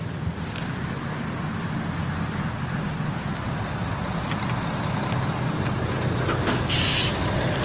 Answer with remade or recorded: recorded